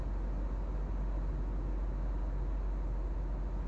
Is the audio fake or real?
real